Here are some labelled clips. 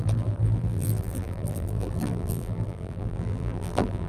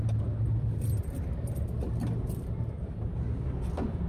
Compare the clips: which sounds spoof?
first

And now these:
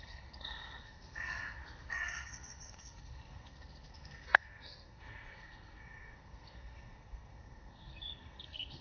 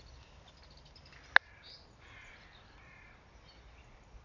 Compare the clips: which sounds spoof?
first